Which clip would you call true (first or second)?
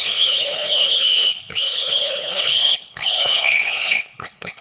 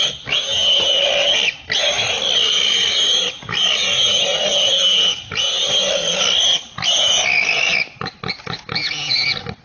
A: second